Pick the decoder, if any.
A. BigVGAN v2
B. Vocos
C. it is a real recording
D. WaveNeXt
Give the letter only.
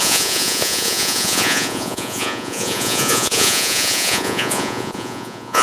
B